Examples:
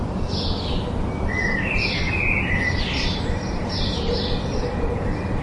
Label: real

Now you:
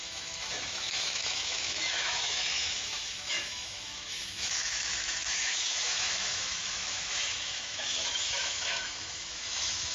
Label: fake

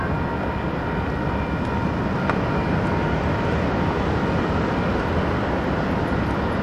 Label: real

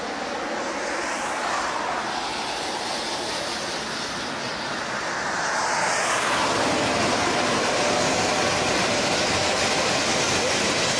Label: real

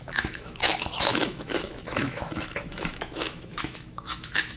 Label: fake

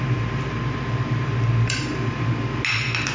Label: real